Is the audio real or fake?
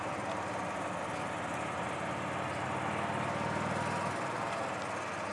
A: real